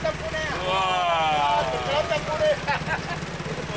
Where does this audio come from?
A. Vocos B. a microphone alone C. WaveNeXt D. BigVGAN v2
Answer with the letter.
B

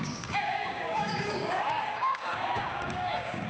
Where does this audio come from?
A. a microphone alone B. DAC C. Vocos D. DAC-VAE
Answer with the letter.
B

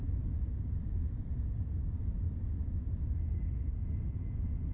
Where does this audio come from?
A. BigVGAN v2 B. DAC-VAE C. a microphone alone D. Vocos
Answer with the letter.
C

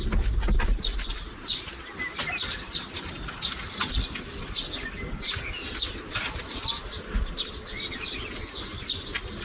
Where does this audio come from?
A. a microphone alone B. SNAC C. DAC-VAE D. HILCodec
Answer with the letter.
A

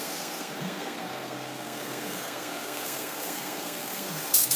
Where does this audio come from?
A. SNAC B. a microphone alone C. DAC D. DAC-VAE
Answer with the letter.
A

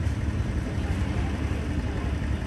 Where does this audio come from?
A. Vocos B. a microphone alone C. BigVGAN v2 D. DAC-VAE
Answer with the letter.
B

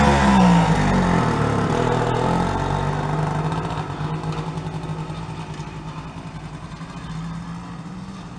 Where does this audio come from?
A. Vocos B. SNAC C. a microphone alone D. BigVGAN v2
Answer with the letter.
C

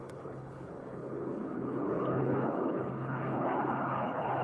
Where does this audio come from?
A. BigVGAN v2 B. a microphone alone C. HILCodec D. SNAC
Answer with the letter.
C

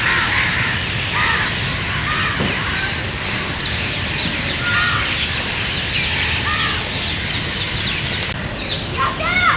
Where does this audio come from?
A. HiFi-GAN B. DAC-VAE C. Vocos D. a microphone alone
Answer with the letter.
D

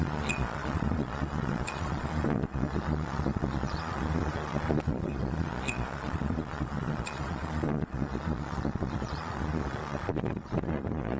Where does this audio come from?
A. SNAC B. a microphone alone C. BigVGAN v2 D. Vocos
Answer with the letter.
D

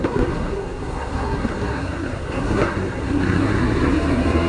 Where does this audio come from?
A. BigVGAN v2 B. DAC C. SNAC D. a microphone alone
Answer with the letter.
C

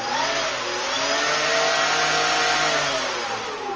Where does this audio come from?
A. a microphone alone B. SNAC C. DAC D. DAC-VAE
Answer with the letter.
A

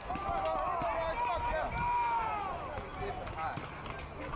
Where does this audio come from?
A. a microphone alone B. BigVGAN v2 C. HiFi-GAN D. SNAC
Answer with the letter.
A